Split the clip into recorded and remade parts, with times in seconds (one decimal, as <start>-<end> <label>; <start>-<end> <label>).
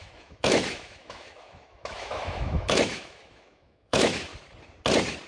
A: 0.0-4.3 remade; 4.3-5.3 recorded